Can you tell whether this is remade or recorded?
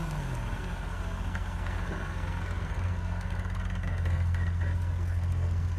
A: remade